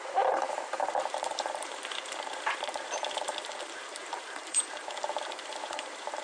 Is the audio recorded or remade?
remade